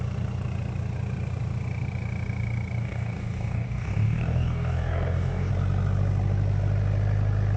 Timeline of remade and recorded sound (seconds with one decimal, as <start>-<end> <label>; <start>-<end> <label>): 0.0-2.8 recorded; 2.8-5.5 remade; 5.5-7.6 recorded